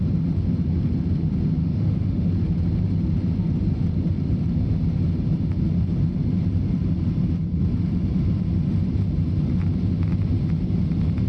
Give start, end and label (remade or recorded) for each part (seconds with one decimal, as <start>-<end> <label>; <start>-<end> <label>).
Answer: 0.0-1.6 recorded; 1.6-2.3 remade; 2.3-11.3 recorded